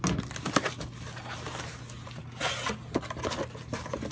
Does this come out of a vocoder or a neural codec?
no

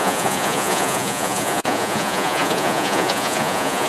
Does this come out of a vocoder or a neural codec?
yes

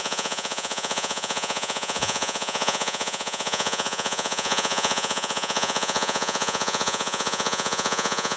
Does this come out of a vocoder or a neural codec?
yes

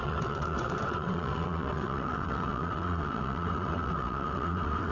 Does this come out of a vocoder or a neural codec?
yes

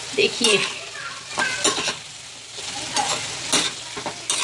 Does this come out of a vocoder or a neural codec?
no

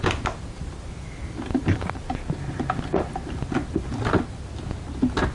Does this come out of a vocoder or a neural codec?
no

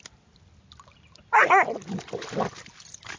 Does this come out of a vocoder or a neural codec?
no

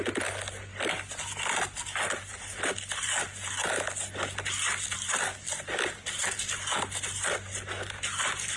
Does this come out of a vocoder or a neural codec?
no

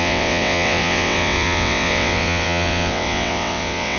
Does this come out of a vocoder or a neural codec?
yes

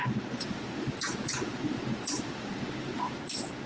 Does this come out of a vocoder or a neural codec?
yes